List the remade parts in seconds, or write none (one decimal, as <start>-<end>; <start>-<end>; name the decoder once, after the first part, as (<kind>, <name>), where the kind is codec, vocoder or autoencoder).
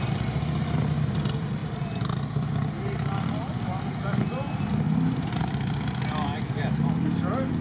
none